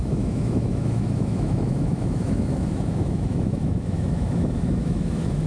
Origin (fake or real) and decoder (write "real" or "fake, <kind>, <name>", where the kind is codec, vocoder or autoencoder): fake, autoencoder, DAC-VAE